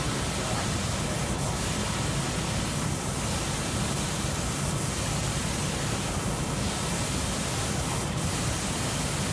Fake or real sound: real